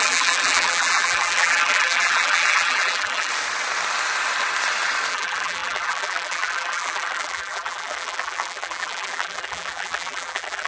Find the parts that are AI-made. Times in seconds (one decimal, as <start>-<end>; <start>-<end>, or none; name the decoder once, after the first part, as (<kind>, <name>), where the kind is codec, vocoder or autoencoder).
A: 0.0-3.3 (vocoder, BigVGAN v2); 5.1-10.7